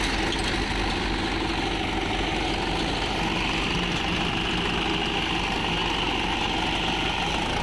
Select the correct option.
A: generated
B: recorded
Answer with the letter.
B